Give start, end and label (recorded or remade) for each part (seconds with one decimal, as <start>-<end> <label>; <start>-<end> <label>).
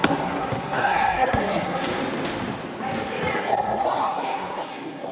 0.0-1.9 remade; 1.9-3.3 recorded; 3.3-5.1 remade